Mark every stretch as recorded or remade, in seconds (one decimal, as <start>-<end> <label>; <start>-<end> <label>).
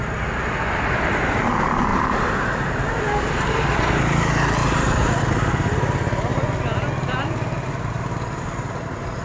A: 0.0-1.9 recorded; 1.9-3.0 remade; 3.0-9.2 recorded